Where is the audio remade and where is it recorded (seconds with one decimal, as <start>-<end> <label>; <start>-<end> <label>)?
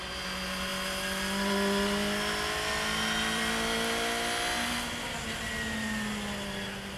0.0-7.0 recorded